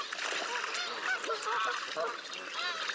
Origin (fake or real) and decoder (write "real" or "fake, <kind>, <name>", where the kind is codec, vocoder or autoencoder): real